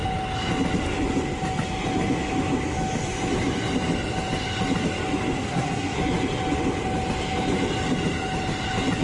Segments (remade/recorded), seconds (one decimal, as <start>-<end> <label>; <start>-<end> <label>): 0.0-5.4 recorded; 5.4-6.0 remade; 6.0-9.0 recorded